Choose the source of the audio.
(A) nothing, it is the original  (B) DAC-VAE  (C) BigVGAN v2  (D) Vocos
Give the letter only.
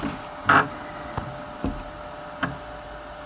A